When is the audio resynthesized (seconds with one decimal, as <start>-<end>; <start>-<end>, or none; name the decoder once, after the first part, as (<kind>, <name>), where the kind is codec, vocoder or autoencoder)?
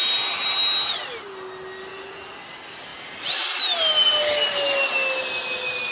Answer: none